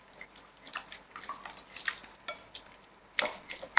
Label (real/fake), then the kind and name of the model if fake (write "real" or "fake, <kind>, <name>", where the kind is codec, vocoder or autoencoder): real